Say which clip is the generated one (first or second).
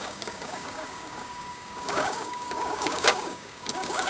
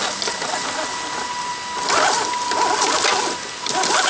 first